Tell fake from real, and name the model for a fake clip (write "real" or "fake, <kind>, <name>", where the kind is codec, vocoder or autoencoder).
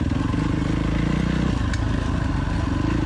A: real